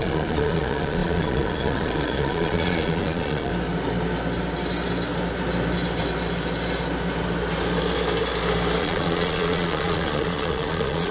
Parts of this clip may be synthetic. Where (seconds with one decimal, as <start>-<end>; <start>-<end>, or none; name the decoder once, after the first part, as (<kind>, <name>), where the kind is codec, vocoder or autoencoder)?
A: 0.0-3.5 (vocoder, Vocos); 8.8-11.1